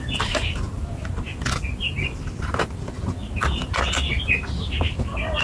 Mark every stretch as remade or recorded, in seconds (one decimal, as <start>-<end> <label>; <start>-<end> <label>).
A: 0.0-5.4 recorded